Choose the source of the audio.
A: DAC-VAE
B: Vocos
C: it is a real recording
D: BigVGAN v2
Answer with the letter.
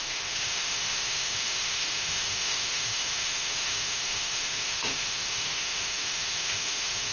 A